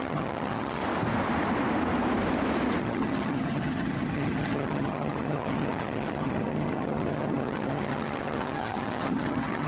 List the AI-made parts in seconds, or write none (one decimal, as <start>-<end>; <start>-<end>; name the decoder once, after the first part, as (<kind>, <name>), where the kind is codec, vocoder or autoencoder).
0.0-0.8 (vocoder, HiFi-GAN); 2.8-9.7